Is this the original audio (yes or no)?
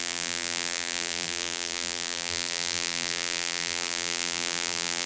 no